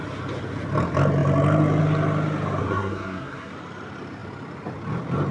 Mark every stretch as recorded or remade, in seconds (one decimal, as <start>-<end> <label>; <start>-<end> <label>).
0.0-2.6 recorded; 2.6-3.5 remade; 3.5-5.3 recorded